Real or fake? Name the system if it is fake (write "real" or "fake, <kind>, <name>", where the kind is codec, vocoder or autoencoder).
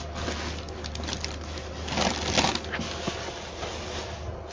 real